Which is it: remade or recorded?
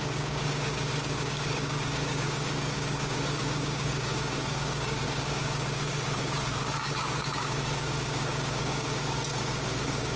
remade